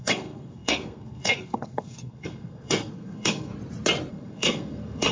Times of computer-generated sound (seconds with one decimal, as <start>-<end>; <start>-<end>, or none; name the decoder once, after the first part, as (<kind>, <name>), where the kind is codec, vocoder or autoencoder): 0.0-3.5 (codec, SNAC); 4.1-5.1